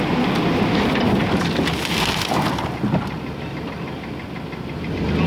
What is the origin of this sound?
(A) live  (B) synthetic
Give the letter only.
A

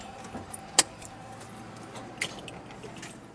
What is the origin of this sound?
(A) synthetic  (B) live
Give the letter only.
B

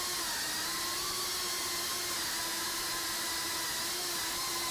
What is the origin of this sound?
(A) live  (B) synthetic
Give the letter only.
A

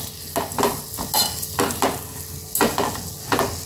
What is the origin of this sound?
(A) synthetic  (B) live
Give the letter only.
B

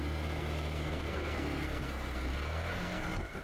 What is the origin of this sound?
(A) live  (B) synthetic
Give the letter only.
B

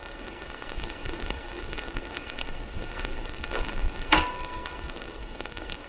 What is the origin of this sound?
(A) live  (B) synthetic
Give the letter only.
B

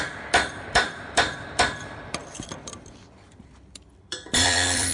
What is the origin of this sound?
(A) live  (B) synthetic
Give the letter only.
B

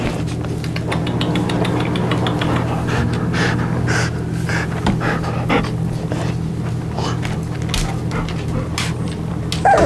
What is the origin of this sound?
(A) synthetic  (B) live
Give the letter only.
B